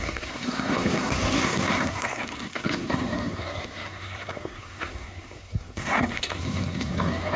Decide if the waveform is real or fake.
fake